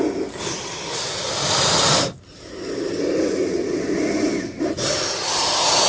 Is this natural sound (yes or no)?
yes